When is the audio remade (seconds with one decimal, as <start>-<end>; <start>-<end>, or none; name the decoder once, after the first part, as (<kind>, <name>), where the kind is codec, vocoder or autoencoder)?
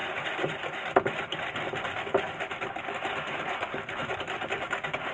none